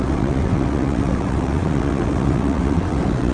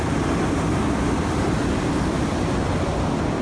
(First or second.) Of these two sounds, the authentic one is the second